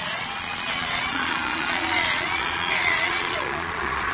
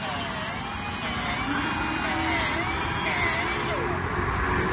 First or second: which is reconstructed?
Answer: first